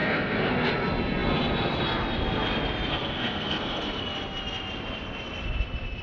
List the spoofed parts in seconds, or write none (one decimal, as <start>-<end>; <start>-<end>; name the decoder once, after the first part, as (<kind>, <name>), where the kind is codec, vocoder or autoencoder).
0.0-0.7 (codec, SNAC); 2.9-4.0